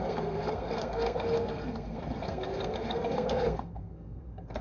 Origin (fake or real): fake